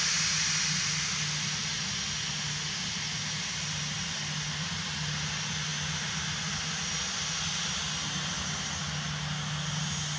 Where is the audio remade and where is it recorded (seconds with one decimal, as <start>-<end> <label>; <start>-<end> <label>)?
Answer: 0.0-10.2 recorded